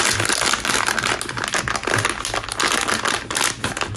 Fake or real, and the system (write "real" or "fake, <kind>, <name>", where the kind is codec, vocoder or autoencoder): real